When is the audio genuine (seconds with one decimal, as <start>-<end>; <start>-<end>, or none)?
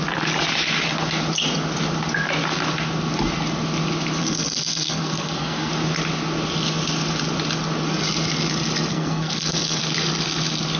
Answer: 0.0-4.2; 5.7-8.9; 9.8-10.8